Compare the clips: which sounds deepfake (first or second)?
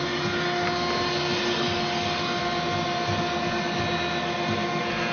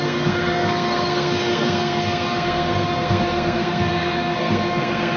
second